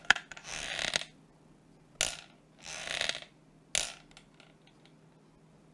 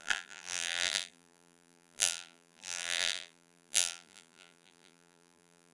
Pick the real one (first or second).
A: first